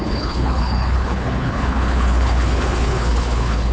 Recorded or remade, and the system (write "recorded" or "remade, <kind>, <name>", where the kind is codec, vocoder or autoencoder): remade, codec, HILCodec